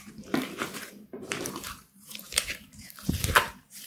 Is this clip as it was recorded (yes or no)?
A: no